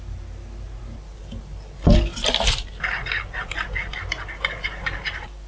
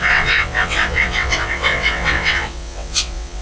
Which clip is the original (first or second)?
first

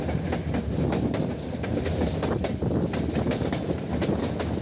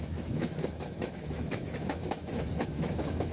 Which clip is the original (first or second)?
first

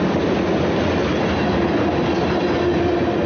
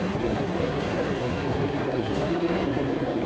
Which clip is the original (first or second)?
first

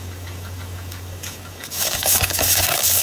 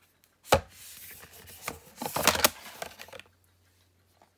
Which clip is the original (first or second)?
second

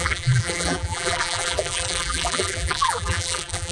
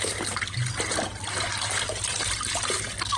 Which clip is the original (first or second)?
second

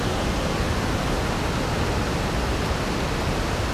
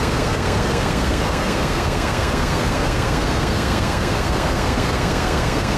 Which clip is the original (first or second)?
first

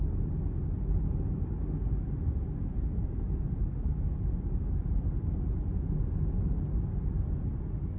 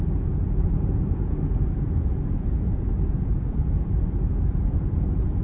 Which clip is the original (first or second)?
first